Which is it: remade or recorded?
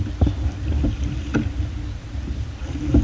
recorded